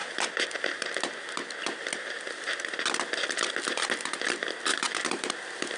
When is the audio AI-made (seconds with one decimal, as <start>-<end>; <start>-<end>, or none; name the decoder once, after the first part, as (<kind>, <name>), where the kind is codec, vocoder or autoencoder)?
4.7-5.3 (vocoder, BigVGAN v2)